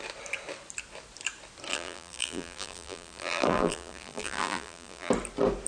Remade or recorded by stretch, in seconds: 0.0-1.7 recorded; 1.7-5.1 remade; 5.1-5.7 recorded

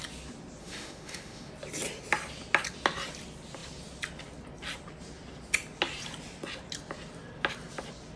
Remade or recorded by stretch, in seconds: 0.0-0.6 recorded; 0.6-1.5 remade; 1.5-8.2 recorded

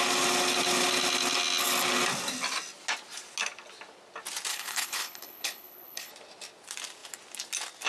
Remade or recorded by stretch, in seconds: 0.0-4.5 recorded; 4.5-6.1 remade; 6.1-7.9 recorded

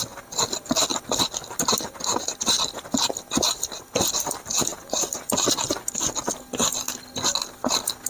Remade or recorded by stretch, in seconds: 0.0-8.1 recorded

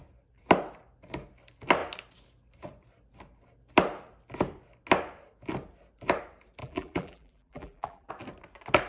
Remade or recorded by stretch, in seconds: 0.0-6.6 recorded; 6.6-8.1 remade; 8.1-8.9 recorded

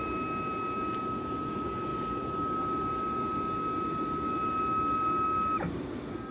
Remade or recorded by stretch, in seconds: 0.0-6.3 recorded

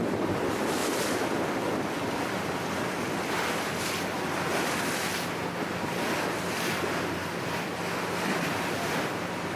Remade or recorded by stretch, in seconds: 0.0-0.8 recorded; 0.8-5.3 remade; 5.3-9.6 recorded

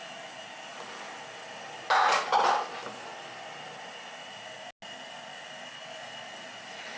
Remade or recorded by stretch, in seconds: 0.0-7.0 recorded